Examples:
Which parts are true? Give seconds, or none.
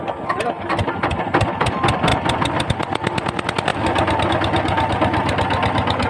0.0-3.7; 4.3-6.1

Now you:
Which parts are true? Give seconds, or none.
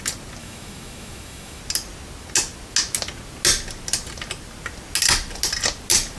0.0-0.4; 1.6-6.2